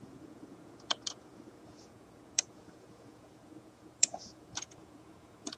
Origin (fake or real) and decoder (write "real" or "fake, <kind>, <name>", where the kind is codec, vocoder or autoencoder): fake, vocoder, Vocos